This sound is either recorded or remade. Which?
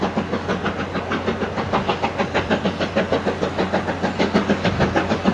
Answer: recorded